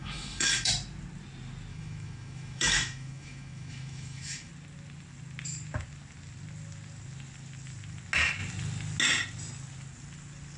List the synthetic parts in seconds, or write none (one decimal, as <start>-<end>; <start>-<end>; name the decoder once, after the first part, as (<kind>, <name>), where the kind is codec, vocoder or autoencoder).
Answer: 0.0-0.7 (autoencoder, DAC-VAE); 1.7-4.5